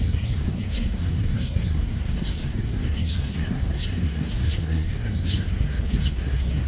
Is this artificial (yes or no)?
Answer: yes